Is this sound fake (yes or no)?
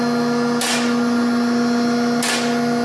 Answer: no